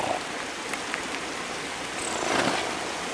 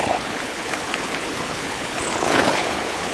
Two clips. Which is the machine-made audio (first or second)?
second